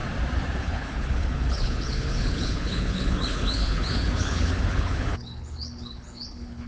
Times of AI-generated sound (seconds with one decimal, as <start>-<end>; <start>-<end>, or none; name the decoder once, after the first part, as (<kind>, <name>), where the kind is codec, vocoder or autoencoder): 0.6-6.7 (codec, HILCodec)